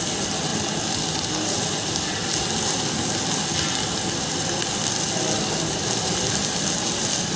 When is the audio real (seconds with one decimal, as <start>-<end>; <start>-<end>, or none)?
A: 0.0-7.4